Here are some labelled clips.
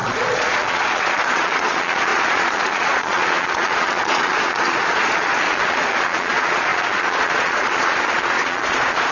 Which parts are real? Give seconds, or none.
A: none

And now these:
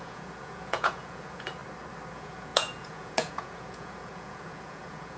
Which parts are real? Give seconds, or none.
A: 1.6-2.1